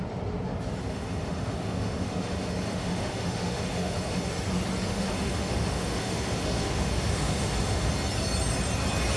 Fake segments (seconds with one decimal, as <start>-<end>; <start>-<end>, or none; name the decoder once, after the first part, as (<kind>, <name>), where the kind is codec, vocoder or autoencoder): 0.9-4.3 (autoencoder, DAC-VAE); 4.9-7.9